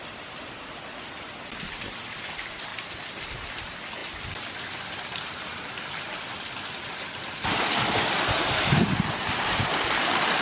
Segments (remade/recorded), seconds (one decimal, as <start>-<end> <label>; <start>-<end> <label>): 0.0-2.7 remade; 2.7-3.6 recorded; 3.6-10.4 remade